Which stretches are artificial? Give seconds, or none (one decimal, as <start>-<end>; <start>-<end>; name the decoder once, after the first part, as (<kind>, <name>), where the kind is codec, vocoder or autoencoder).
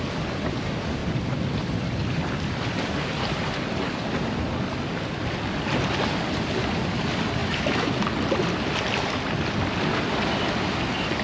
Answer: 7.4-8.0 (autoencoder, DAC-VAE)